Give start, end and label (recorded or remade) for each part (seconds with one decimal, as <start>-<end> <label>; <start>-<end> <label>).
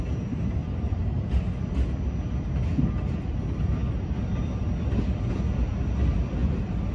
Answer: 0.0-6.4 recorded; 6.4-6.9 remade